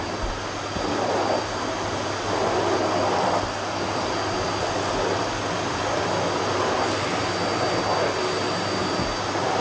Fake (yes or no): no